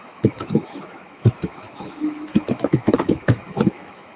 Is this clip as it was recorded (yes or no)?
no